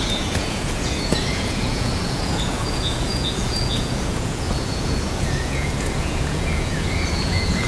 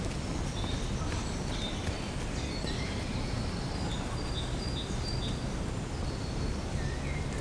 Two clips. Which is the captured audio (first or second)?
second